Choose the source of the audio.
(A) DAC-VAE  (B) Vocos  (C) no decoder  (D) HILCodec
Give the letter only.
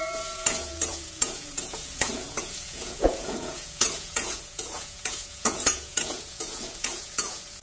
B